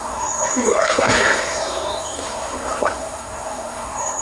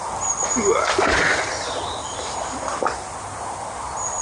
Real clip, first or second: second